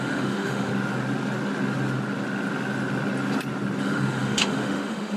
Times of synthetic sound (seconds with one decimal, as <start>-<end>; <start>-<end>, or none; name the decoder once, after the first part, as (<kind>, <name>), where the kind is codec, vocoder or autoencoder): 0.0-0.7 (autoencoder, DAC-VAE); 3.8-5.2